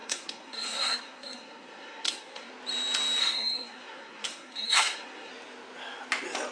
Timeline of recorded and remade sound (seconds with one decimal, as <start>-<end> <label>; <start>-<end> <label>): 0.0-2.5 remade; 2.5-3.2 recorded; 3.2-5.3 remade; 5.3-6.5 recorded